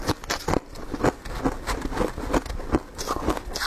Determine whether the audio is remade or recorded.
recorded